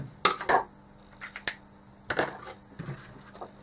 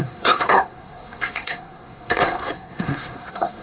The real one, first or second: first